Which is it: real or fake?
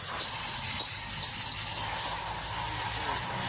real